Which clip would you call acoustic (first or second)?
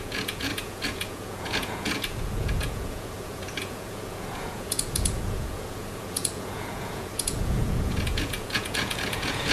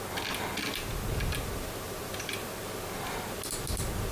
second